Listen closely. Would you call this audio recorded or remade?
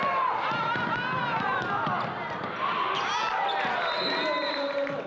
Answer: recorded